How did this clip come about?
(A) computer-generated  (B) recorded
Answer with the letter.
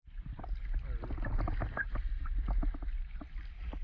B